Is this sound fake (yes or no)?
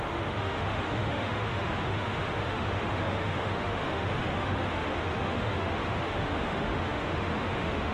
yes